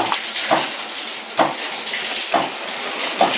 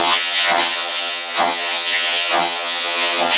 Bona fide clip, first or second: first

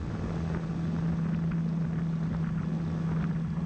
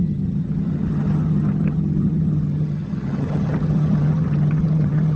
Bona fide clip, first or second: first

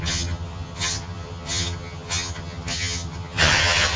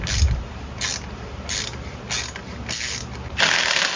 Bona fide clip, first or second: second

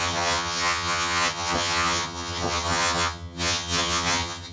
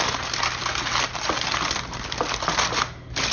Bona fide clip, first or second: second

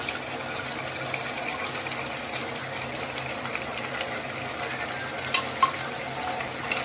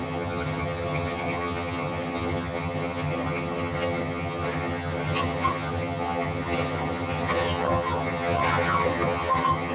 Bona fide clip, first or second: first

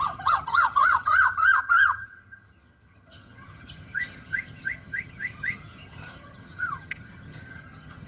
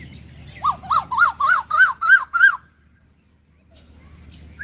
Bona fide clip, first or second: second